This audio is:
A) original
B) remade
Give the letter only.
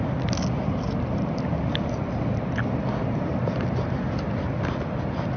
A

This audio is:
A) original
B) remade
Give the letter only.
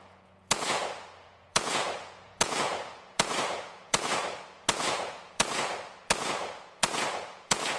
B